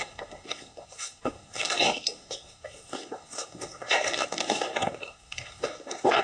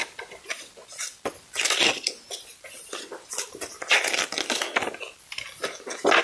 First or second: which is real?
second